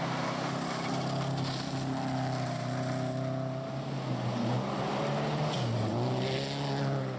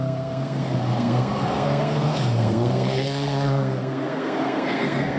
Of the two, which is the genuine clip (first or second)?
first